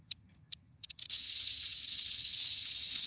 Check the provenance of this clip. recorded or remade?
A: remade